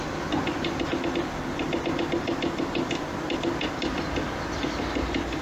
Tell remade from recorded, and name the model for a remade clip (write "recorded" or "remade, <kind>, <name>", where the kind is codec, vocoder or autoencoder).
recorded